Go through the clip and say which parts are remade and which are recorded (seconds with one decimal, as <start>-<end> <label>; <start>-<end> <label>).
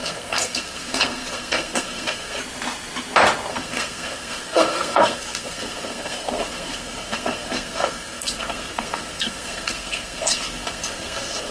0.0-2.4 remade; 2.4-3.5 recorded; 3.5-11.5 remade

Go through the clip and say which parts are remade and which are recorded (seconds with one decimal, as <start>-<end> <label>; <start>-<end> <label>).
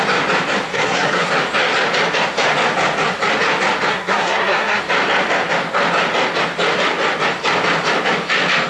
0.0-0.7 recorded; 0.7-1.3 remade; 1.3-3.9 recorded; 3.9-4.8 remade; 4.8-8.7 recorded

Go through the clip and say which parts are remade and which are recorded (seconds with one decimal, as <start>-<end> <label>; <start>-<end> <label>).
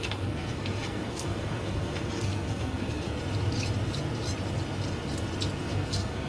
0.0-3.2 remade; 3.2-5.6 recorded; 5.6-6.3 remade